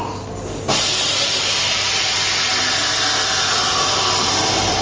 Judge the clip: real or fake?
real